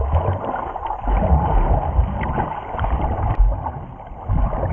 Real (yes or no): yes